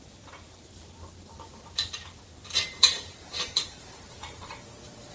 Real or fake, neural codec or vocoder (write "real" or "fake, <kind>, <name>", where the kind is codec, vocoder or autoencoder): fake, vocoder, BigVGAN v2